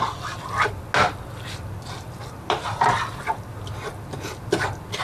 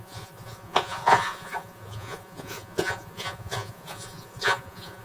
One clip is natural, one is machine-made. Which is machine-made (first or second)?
second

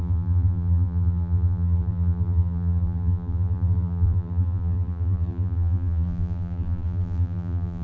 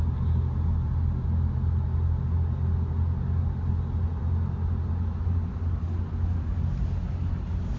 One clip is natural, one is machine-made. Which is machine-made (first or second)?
first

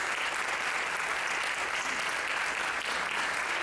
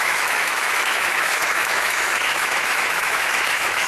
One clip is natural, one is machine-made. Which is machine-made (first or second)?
second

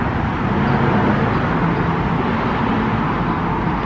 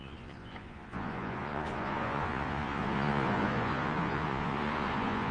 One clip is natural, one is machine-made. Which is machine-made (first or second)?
second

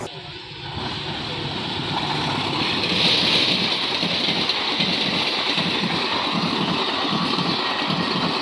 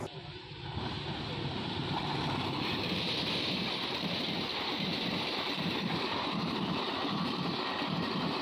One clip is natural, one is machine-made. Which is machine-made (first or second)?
second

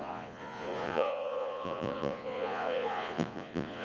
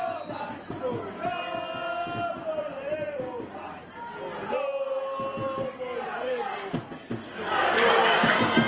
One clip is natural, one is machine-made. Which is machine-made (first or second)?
first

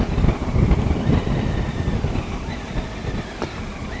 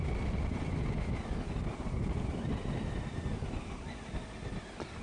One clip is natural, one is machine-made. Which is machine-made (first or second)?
first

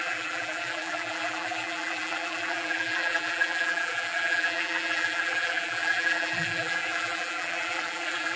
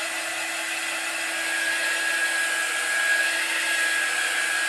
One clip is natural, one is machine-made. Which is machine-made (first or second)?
first